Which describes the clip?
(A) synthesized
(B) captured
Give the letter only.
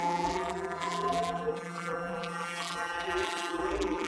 A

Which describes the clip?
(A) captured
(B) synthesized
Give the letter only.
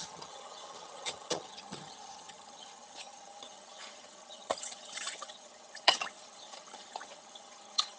B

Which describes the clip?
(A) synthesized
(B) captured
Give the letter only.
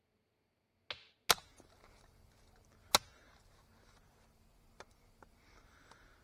B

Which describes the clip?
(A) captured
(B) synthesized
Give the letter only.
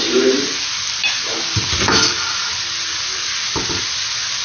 A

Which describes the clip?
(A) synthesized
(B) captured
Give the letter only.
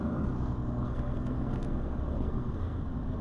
A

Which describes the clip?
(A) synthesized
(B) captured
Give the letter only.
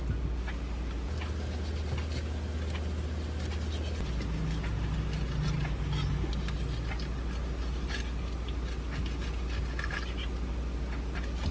B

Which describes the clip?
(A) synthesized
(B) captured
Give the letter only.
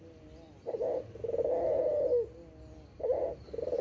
B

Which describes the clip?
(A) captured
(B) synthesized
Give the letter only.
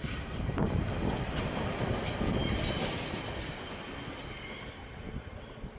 A